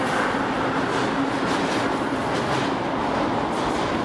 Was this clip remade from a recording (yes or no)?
no